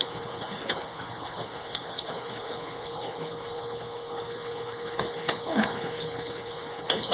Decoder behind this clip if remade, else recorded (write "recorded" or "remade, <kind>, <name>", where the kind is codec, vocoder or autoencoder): remade, codec, HILCodec